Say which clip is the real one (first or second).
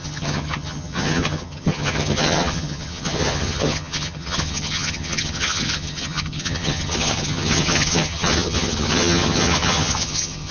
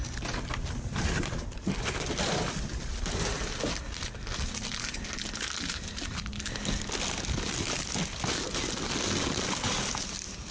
second